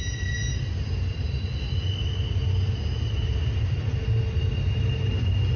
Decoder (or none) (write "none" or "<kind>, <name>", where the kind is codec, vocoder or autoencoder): none